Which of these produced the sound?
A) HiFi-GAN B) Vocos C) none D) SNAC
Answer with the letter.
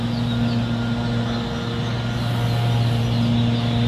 C